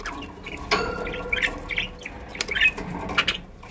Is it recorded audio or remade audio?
recorded